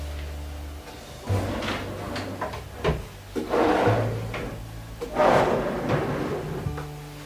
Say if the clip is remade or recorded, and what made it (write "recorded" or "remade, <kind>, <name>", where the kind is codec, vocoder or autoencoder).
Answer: recorded